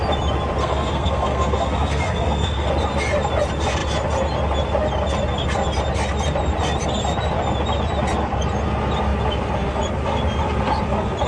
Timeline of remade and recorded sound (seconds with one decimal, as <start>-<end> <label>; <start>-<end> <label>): 0.0-0.6 recorded; 0.6-2.7 remade; 2.7-11.3 recorded